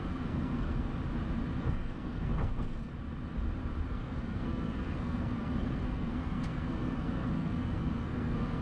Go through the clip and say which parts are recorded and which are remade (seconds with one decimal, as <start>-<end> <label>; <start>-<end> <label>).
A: 0.0-0.9 remade; 0.9-1.6 recorded; 1.6-2.9 remade; 2.9-3.9 recorded; 3.9-8.6 remade